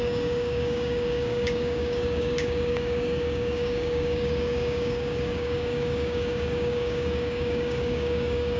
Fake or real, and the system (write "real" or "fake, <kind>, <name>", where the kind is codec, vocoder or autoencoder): fake, codec, DAC